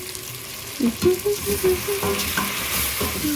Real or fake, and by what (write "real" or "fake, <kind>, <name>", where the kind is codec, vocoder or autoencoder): real